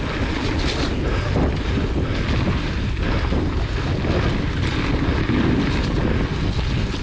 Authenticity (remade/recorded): recorded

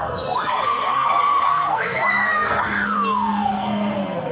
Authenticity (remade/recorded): remade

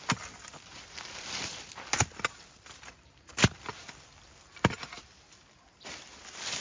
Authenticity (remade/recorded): recorded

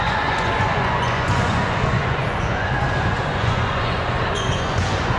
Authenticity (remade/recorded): remade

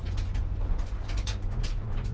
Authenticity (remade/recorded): remade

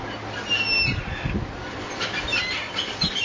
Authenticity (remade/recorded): recorded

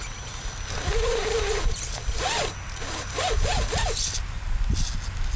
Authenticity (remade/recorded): recorded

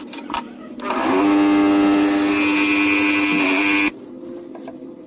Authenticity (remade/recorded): recorded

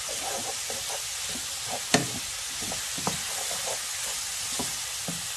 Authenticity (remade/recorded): recorded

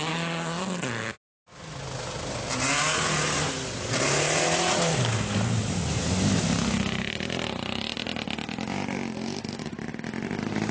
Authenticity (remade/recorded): recorded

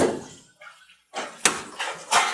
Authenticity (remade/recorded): recorded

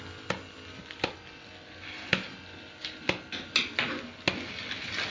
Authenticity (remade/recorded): recorded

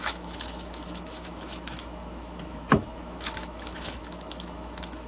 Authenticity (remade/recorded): remade